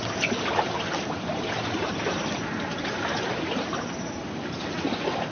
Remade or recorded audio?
recorded